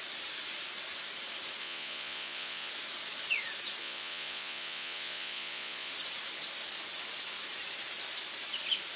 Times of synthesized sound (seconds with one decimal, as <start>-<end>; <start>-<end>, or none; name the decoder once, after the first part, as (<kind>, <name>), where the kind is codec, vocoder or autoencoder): 1.6-2.7 (vocoder, Vocos); 3.8-5.9